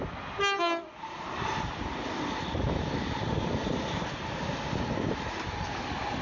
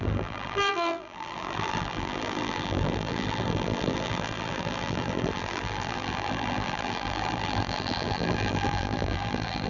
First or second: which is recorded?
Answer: first